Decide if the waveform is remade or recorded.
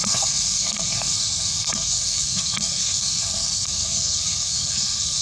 remade